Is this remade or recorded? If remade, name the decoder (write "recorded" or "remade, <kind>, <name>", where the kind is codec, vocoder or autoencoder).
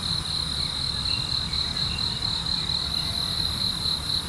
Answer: recorded